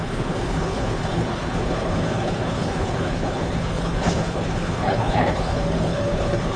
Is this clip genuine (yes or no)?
no